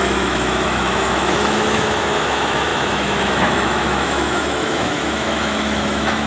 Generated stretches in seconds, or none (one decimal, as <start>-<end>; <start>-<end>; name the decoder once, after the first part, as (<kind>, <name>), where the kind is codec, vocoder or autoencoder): 0.0-6.3 (autoencoder, DAC-VAE)